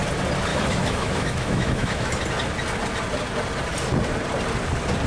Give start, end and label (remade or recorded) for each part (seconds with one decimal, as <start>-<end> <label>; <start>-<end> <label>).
0.0-0.5 recorded; 0.5-2.1 remade; 2.1-5.1 recorded